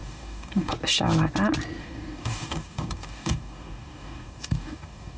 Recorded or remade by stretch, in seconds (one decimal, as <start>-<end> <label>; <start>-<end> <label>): 0.0-0.7 remade; 0.7-1.8 recorded; 1.8-5.2 remade